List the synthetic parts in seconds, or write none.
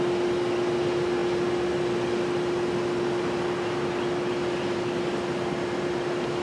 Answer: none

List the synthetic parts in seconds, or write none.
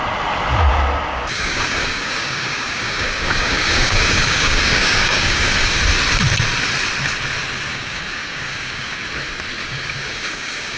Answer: 1.1-5.8 (codec, DAC); 7.7-9.0; 9.6-10.8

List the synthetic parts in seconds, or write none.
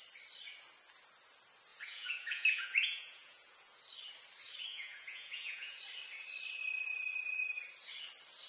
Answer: 1.7-3.8 (vocoder, Vocos); 4.7-5.8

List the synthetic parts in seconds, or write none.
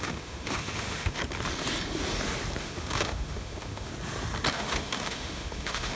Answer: 0.0-1.2 (autoencoder, DAC-VAE); 2.6-3.9; 4.5-6.0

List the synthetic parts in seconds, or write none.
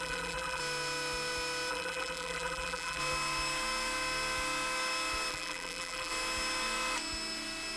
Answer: 0.0-0.6 (vocoder, BigVGAN v2); 1.7-3.0; 5.3-6.1